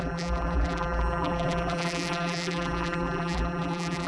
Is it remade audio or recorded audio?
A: remade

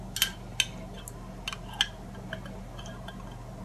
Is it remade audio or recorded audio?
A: recorded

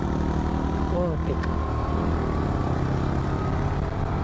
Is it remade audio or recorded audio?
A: recorded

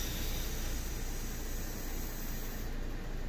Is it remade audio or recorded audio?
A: recorded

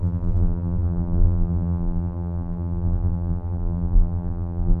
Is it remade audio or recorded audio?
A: remade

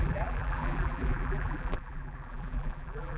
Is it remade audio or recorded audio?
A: remade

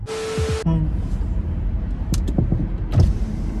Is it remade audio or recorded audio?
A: recorded